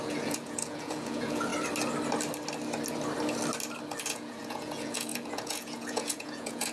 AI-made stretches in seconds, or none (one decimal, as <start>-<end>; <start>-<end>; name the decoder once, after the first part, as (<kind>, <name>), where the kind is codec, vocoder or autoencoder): 0.0-1.5 (vocoder, Vocos); 4.1-6.7